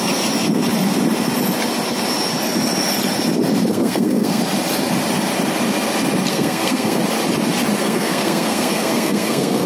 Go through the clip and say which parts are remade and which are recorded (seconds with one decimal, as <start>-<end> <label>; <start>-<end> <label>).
0.0-3.7 recorded; 3.7-4.4 remade; 4.4-6.3 recorded; 6.3-7.0 remade; 7.0-7.8 recorded; 7.8-9.7 remade